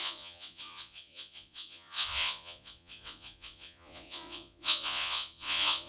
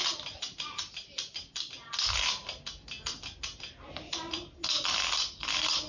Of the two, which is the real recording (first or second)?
second